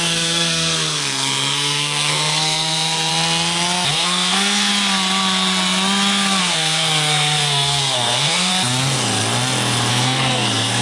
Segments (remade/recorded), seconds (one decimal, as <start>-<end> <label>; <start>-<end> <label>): 0.0-3.1 remade; 3.1-3.9 recorded; 3.9-4.7 remade; 4.7-6.4 recorded; 6.4-8.5 remade; 8.5-9.9 recorded; 9.9-10.8 remade